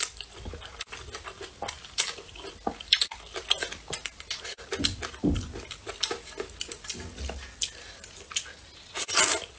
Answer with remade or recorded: recorded